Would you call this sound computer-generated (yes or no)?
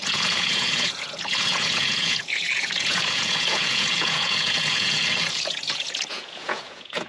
yes